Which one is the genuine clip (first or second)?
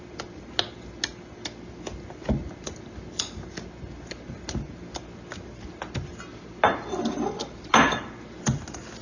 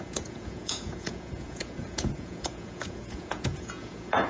first